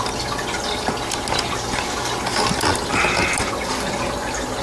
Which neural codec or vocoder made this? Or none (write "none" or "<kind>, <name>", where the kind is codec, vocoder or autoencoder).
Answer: none